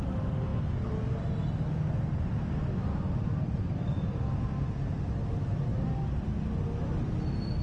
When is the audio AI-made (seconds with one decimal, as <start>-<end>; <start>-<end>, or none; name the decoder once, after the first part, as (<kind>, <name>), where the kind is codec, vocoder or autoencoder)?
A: none